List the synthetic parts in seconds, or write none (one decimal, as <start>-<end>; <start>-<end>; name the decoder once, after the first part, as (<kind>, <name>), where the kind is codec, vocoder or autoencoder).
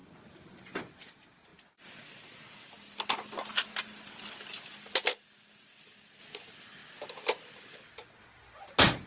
none